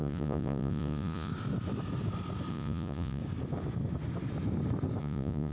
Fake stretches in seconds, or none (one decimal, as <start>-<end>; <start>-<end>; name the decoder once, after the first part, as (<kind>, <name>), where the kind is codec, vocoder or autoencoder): 0.0-1.3 (vocoder, Vocos); 2.5-3.2; 5.0-5.5